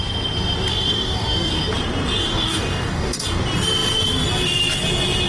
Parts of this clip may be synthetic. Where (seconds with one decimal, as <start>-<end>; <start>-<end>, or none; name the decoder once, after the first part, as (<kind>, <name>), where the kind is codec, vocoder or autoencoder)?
0.7-1.5 (codec, DAC); 2.2-3.4